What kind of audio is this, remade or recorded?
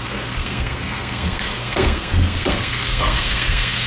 remade